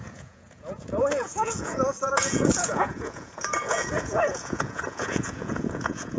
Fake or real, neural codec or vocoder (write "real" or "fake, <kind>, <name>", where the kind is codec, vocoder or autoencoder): fake, vocoder, Vocos